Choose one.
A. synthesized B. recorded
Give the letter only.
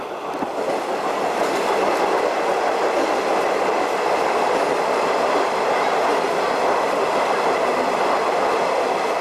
B